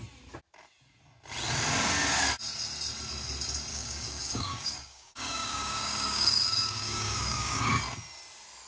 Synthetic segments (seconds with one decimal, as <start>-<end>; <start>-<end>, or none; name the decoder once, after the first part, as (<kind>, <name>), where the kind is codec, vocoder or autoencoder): 3.7-7.8 (codec, DAC)